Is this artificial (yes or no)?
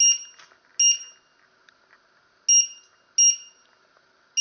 no